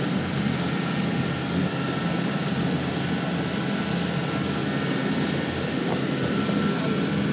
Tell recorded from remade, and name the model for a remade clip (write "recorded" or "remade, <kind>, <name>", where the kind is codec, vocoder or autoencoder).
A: recorded